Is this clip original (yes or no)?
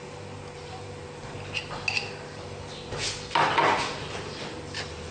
yes